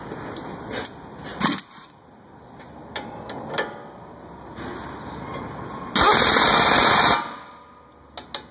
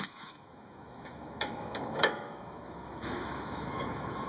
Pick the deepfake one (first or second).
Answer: second